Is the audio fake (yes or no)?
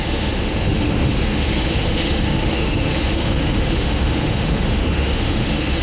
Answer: yes